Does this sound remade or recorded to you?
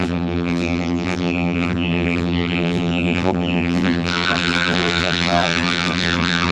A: remade